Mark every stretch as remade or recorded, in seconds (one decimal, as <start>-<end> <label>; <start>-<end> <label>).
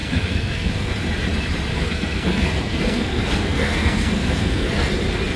0.0-0.9 remade; 0.9-1.7 recorded; 1.7-4.9 remade; 4.9-5.4 recorded